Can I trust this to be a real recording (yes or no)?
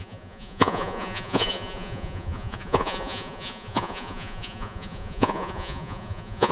no